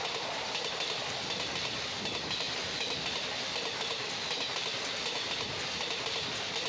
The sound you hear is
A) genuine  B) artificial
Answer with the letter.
A